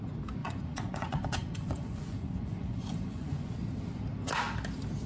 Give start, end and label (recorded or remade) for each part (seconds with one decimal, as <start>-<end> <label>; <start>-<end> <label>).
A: 0.0-0.4 recorded; 0.4-3.5 remade; 3.5-5.1 recorded